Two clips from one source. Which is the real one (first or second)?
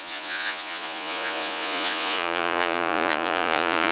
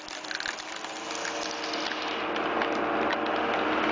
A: second